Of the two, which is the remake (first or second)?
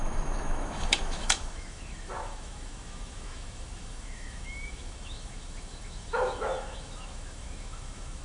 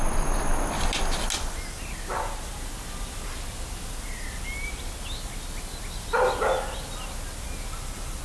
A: first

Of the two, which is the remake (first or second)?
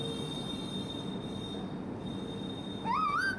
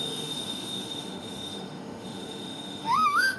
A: second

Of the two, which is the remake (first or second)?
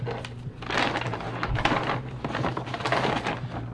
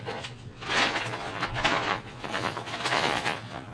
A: second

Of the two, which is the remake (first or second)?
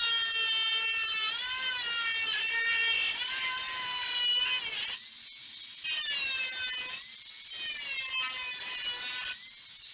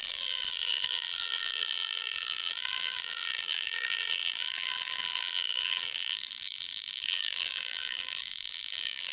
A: second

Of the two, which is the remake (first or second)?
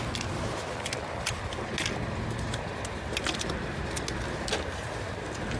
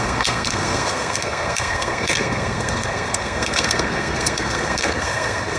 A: second